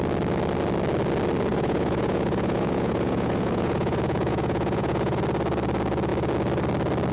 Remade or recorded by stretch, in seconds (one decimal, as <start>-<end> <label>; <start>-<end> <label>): 0.0-1.5 recorded; 1.5-5.2 remade; 5.2-7.1 recorded